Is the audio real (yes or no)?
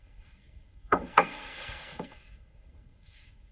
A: no